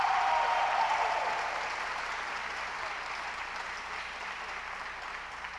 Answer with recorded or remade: recorded